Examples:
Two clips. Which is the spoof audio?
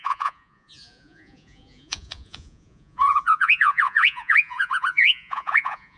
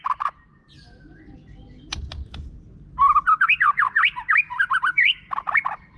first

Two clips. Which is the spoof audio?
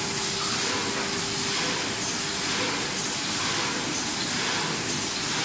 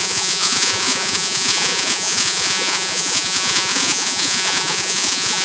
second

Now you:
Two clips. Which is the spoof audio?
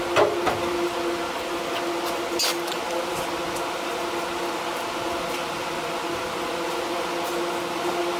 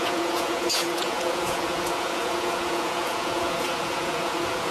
second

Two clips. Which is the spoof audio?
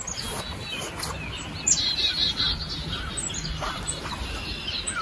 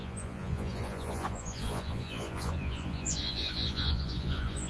second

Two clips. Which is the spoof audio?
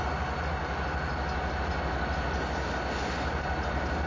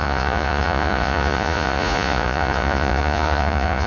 second